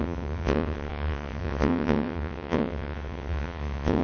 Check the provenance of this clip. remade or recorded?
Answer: remade